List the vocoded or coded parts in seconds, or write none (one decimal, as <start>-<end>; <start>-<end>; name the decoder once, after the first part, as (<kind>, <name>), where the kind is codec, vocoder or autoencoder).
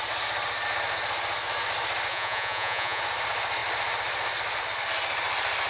2.1-3.0 (vocoder, Vocos)